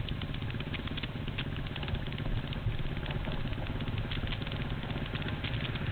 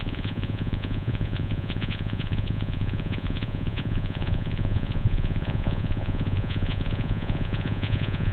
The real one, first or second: first